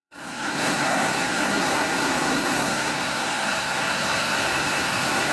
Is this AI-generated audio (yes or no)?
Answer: yes